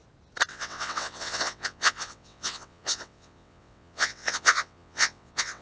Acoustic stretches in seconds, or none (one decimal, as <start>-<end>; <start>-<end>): 0.0-0.5

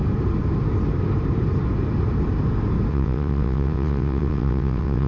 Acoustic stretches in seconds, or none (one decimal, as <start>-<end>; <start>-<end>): 0.0-2.9

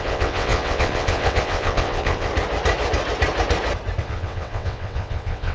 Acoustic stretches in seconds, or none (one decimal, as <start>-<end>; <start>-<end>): 2.3-4.0

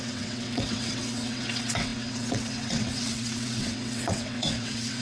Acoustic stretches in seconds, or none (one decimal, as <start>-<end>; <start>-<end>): none

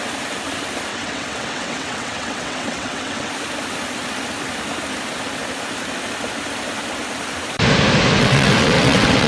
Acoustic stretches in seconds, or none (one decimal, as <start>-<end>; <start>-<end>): 0.0-0.9; 3.3-8.2